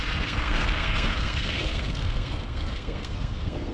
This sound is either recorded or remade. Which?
remade